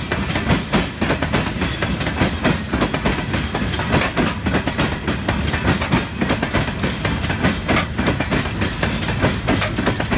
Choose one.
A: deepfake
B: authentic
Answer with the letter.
B